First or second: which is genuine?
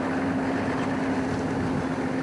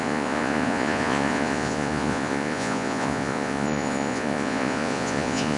first